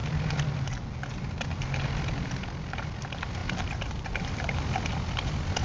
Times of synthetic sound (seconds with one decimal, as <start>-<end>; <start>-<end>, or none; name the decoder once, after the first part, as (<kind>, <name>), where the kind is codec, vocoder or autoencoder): none